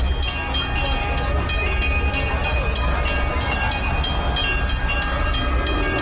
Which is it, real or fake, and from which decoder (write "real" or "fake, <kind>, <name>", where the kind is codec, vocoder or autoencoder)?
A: real